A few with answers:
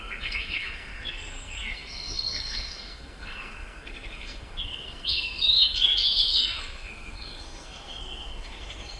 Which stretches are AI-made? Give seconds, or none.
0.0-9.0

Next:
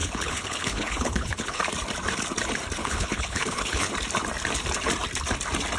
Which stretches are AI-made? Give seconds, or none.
0.0-1.6; 2.8-3.9